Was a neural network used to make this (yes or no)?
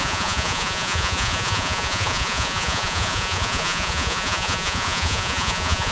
yes